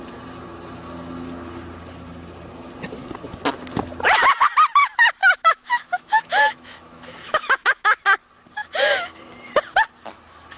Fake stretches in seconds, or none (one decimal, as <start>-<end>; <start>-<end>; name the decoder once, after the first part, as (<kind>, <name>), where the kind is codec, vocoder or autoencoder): 5.2-8.0 (autoencoder, DAC-VAE); 8.6-9.2